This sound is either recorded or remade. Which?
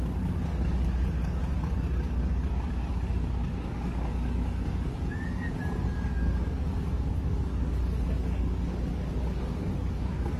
remade